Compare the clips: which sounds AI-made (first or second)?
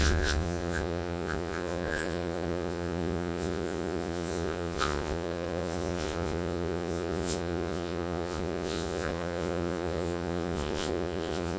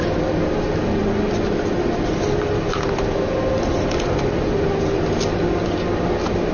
first